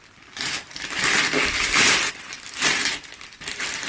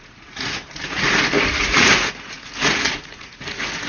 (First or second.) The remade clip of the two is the second